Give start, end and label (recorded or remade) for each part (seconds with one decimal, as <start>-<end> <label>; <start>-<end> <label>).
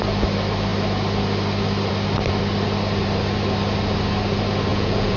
0.0-4.7 recorded; 4.7-5.2 remade